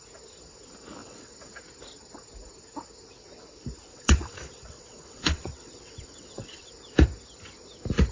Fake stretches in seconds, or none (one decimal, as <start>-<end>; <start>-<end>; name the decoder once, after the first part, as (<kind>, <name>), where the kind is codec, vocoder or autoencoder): 1.0-1.6 (vocoder, WaveNeXt); 3.9-6.7

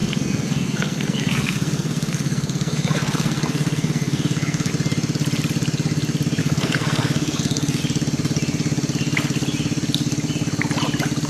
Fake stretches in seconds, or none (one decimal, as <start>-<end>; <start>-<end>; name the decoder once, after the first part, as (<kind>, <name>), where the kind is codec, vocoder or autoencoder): 0.0-4.7 (codec, SNAC); 6.4-7.8

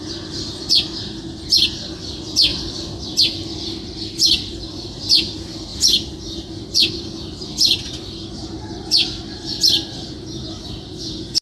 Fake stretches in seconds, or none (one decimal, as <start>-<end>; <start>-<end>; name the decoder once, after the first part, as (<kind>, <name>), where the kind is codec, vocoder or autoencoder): none

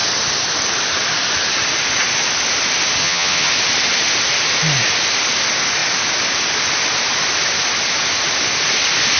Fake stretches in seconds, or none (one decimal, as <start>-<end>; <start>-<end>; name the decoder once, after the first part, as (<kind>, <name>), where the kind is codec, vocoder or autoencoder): 3.0-3.5 (vocoder, HiFi-GAN)

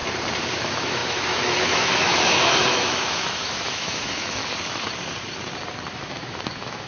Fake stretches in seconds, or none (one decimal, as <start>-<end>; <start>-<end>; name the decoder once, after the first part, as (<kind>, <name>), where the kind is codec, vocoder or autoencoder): 0.5-4.4 (autoencoder, DAC-VAE); 5.9-6.9